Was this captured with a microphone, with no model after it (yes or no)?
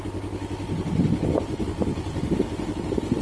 yes